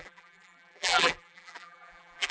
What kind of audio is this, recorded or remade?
remade